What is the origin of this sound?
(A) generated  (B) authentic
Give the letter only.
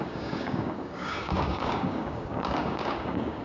A